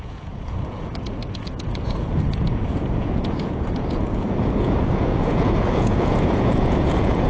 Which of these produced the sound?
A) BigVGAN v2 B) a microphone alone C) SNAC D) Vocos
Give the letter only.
D